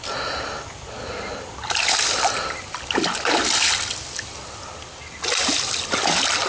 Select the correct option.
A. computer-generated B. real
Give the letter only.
B